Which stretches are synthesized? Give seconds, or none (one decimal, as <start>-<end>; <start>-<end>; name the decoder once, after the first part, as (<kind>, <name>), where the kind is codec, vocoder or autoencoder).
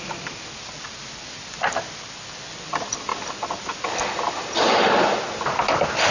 none